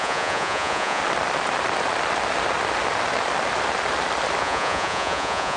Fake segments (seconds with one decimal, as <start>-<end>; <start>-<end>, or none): 0.0-1.0; 4.4-5.6